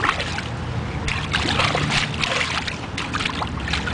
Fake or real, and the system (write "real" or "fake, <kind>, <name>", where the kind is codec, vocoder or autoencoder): real